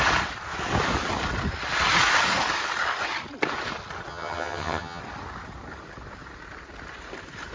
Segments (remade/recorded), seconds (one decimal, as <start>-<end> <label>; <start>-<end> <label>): 0.0-4.1 recorded; 4.1-5.0 remade; 5.0-7.5 recorded